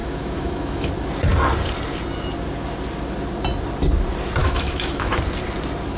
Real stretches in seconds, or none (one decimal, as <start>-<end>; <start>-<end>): 0.9-4.4; 5.2-6.0